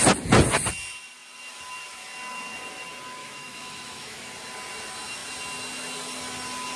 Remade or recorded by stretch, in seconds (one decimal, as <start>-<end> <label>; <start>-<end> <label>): 0.0-3.2 recorded; 3.2-4.3 remade; 4.3-6.8 recorded